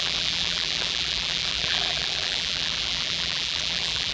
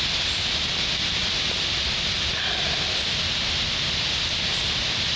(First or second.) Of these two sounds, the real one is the second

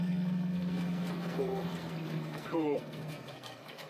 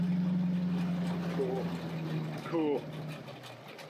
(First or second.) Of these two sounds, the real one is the second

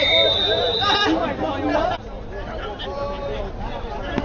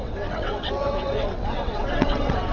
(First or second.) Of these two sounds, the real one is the first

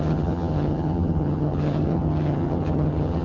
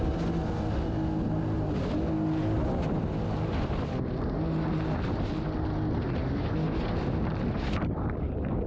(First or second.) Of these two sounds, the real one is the second